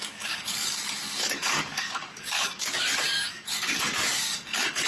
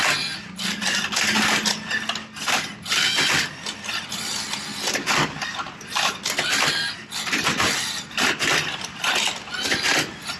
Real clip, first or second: second